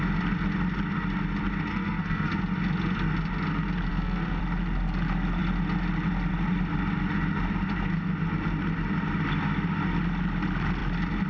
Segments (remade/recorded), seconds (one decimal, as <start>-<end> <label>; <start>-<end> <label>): 0.0-1.7 recorded; 1.7-2.4 remade; 2.4-3.9 recorded; 3.9-4.4 remade; 4.4-11.3 recorded